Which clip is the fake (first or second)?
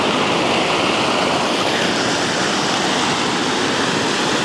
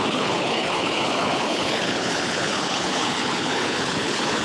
second